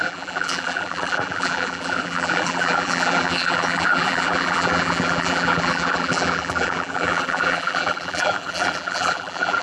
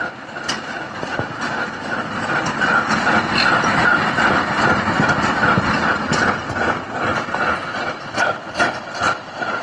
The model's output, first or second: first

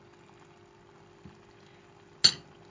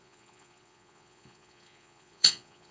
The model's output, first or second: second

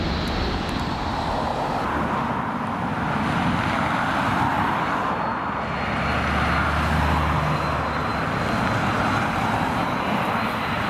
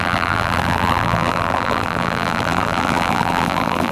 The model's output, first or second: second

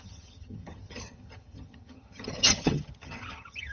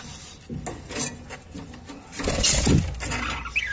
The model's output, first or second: first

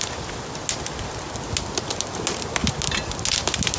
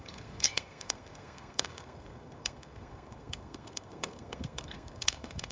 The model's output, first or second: second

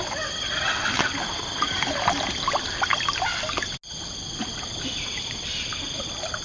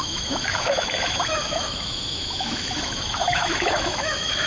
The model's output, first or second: second